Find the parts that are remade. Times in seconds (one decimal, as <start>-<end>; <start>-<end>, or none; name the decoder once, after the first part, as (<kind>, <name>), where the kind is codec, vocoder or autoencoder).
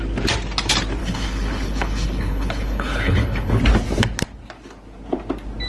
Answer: 1.0-3.6 (codec, HILCodec)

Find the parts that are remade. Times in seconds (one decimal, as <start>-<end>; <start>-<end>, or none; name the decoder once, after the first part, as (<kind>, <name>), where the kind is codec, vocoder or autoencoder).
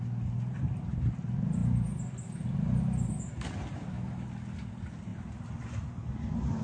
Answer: none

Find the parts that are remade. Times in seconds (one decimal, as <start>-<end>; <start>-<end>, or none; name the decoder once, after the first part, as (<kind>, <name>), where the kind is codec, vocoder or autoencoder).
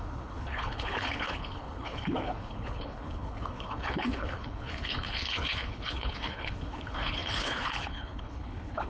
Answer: 0.0-8.9 (codec, HILCodec)